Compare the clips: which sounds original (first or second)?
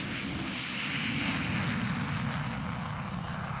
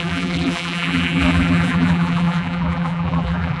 first